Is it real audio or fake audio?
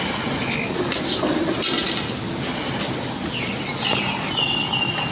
real